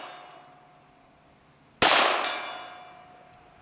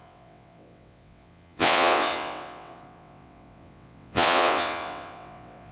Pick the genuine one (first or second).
first